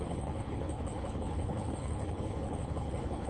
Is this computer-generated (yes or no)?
yes